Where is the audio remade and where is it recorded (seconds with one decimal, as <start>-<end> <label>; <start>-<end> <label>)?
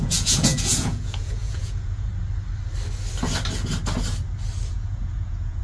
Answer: 0.0-2.1 remade; 2.1-4.7 recorded; 4.7-5.6 remade